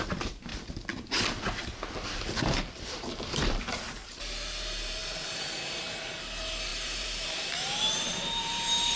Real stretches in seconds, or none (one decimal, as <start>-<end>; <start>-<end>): 0.5-2.3